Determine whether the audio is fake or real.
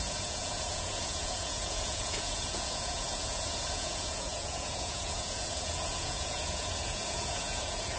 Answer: fake